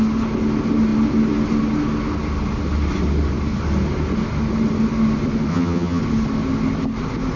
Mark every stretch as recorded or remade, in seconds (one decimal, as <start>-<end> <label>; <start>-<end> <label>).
0.0-5.5 recorded; 5.5-6.0 remade; 6.0-7.4 recorded